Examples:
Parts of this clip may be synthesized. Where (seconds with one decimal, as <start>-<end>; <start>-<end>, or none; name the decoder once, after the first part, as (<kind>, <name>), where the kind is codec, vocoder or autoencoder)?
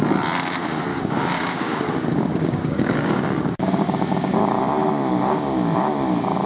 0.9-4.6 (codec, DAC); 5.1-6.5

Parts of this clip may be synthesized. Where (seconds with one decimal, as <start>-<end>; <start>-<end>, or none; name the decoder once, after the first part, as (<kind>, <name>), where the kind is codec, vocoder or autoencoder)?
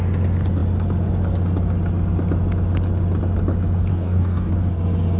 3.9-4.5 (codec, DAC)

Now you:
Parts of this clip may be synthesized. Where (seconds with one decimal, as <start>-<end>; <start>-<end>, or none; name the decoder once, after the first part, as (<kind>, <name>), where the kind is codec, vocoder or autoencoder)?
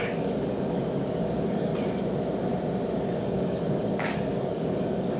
0.0-1.7 (codec, DAC); 3.0-5.2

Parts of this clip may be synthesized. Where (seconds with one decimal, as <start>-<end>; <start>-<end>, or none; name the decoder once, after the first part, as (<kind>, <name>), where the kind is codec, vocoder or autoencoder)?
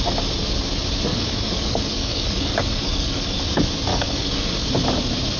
1.1-3.4 (codec, DAC); 3.9-4.7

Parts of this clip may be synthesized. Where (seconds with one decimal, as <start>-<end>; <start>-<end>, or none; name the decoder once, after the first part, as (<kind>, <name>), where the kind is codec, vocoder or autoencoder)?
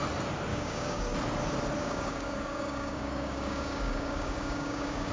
0.5-1.0 (codec, DAC); 1.8-5.1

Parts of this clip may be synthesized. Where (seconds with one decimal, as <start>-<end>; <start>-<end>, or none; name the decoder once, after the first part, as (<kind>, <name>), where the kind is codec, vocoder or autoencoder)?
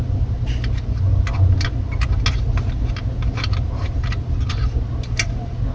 none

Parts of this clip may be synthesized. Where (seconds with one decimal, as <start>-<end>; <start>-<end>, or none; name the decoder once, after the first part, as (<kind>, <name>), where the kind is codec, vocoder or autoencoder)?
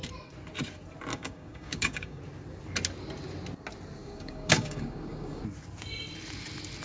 1.1-2.2 (codec, DAC); 4.0-5.4